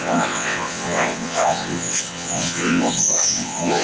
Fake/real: fake